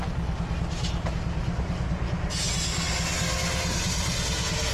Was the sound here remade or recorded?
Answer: recorded